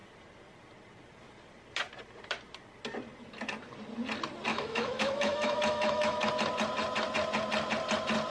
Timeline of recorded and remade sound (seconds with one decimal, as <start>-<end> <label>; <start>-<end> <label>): 0.0-4.5 recorded; 4.5-6.3 remade; 6.3-8.3 recorded